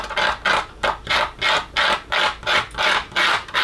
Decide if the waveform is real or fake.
real